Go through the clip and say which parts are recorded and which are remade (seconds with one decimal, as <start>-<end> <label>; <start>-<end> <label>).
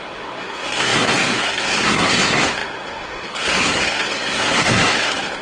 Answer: 0.0-5.4 remade